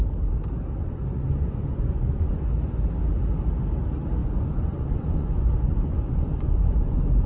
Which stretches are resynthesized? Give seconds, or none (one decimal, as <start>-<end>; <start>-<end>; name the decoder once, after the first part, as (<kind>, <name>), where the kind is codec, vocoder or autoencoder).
0.8-2.4 (vocoder, Vocos); 4.2-7.3